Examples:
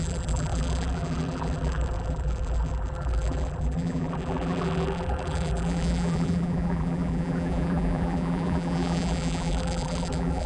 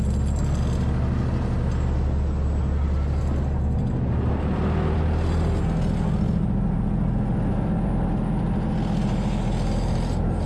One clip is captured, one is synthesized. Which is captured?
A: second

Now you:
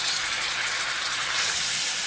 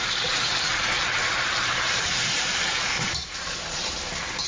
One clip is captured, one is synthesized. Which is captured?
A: first